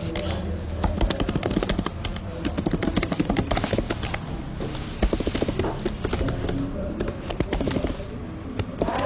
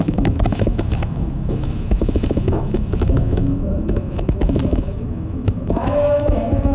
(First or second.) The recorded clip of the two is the first